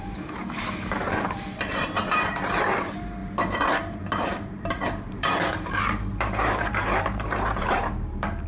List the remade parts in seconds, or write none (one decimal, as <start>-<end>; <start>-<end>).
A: 0.0-8.5